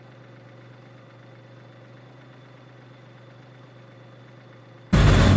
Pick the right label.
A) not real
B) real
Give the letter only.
B